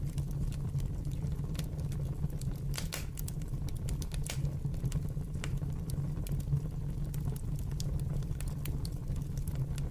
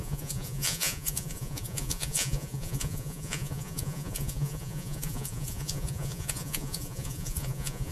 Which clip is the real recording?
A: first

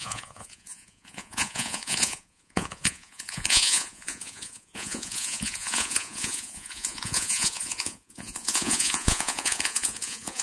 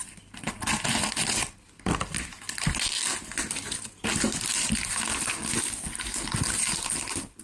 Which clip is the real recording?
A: second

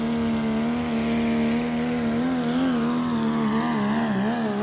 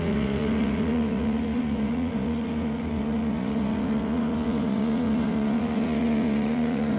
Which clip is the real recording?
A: first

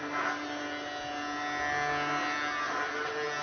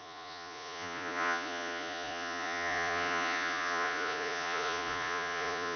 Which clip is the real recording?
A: first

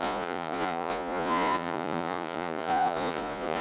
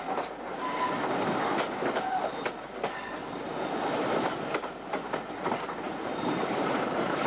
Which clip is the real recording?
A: second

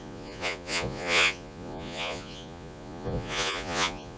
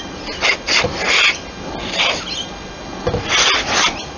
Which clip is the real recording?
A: second